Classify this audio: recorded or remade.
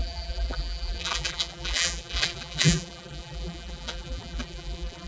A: remade